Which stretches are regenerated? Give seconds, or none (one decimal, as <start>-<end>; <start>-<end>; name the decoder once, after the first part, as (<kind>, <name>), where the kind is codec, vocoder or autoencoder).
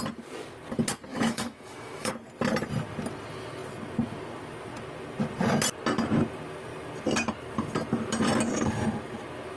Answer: 1.1-2.1 (autoencoder, DAC-VAE)